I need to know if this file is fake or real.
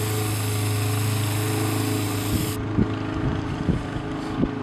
real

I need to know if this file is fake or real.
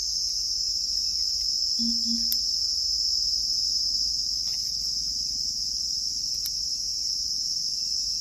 real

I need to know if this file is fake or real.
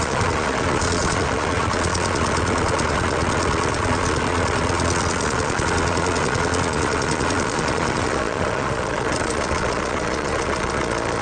fake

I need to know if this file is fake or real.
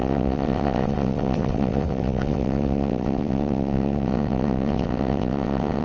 fake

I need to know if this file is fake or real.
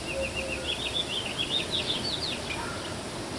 real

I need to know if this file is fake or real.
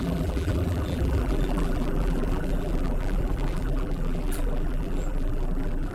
fake